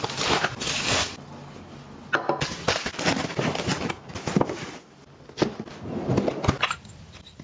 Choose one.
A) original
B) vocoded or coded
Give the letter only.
A